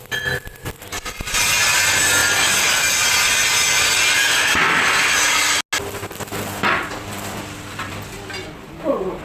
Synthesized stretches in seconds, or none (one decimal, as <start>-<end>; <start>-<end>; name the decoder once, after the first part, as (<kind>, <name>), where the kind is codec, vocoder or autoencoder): none

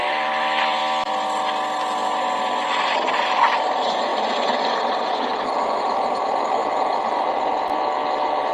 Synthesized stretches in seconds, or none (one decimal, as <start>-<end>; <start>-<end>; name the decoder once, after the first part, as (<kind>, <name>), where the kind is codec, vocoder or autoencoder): 0.0-0.8 (vocoder, BigVGAN v2); 3.1-8.5

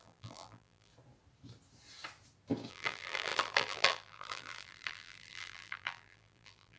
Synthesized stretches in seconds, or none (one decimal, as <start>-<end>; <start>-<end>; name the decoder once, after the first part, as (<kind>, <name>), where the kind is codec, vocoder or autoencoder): 0.0-0.9 (vocoder, BigVGAN v2); 2.7-6.8

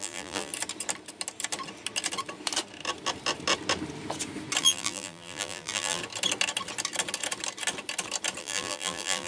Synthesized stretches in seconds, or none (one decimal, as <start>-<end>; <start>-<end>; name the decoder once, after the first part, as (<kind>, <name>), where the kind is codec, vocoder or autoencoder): 0.0-0.5 (vocoder, BigVGAN v2); 4.6-6.0; 8.4-9.3

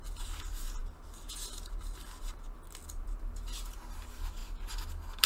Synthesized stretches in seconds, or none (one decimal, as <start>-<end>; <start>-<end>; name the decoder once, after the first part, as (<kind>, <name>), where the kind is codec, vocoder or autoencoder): none

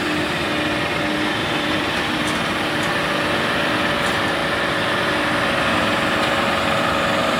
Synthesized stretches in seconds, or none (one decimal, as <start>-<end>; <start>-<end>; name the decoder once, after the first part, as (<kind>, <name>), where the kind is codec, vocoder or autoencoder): 1.4-2.2 (vocoder, BigVGAN v2)